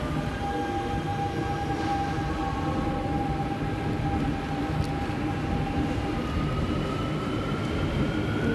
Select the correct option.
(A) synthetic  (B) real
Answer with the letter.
B